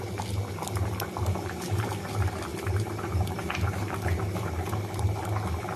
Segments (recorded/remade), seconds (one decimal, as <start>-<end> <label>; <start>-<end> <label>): 0.0-1.3 recorded; 1.3-1.9 remade; 1.9-2.5 recorded; 2.5-5.0 remade; 5.0-5.8 recorded